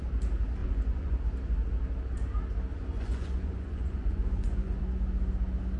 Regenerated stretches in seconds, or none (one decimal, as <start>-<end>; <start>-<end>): 0.6-1.2; 2.7-4.8